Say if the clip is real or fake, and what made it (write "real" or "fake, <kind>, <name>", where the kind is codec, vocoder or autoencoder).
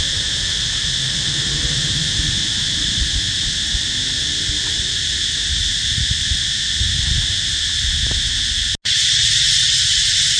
real